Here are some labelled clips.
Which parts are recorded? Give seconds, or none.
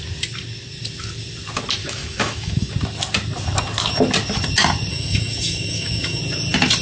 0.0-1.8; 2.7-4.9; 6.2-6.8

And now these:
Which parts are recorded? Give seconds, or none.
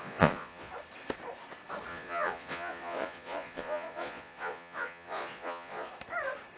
0.7-1.9; 5.9-6.6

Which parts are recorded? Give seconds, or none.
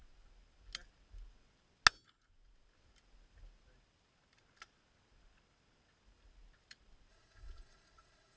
0.0-7.1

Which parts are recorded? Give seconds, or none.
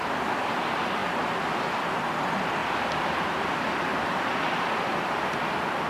none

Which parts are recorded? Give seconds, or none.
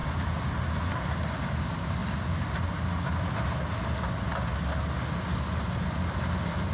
0.0-6.7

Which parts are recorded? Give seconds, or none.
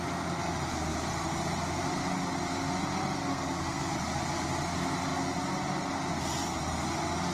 0.0-3.3; 3.9-7.3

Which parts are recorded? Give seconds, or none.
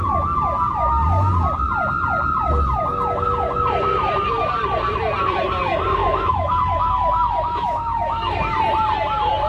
0.0-6.0; 8.4-9.5